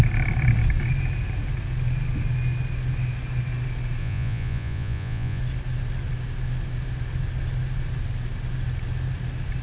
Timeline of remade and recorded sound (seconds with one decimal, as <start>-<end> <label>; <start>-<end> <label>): 0.0-4.0 recorded; 4.0-5.4 remade; 5.4-9.6 recorded